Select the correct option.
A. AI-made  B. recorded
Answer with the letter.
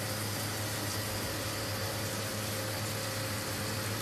B